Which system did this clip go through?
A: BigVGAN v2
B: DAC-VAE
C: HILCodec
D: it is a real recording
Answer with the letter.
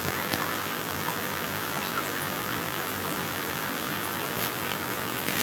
A